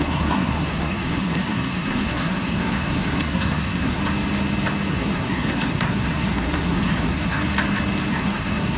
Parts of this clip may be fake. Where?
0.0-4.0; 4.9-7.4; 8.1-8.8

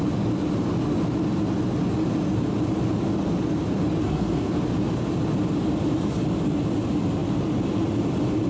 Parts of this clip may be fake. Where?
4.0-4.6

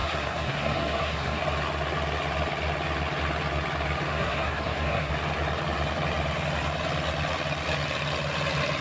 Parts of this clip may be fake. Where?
0.0-1.4; 4.1-5.1

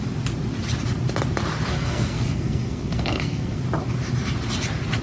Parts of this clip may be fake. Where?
1.7-3.6

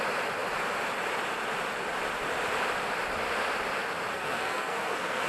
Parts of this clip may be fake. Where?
4.1-5.3